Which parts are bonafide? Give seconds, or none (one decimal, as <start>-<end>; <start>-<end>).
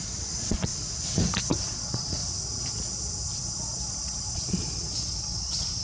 0.7-1.6; 2.2-3.4